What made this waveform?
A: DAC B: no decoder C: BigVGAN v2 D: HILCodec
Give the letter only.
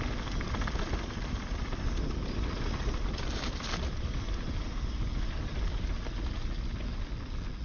B